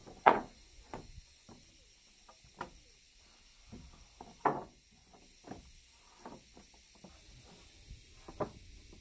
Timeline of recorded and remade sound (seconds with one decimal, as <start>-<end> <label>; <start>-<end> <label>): 0.0-1.7 remade; 1.7-4.5 recorded; 4.5-5.2 remade; 5.2-9.0 recorded